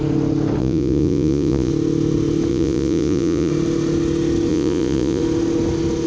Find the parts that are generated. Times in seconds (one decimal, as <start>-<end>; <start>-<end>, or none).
0.6-1.7; 2.5-3.5; 4.5-5.2